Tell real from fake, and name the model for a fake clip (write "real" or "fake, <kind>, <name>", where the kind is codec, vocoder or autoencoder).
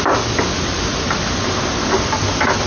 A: real